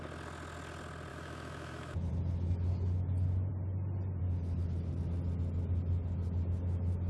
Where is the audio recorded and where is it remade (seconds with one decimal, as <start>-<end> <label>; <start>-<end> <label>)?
0.0-1.1 recorded; 1.1-2.1 remade; 2.1-7.1 recorded